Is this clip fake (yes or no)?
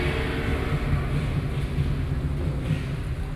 no